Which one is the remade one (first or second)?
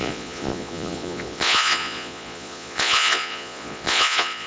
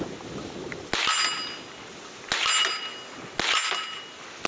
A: first